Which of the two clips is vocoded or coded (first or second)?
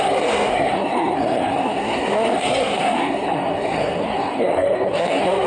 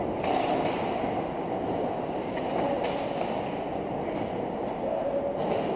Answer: first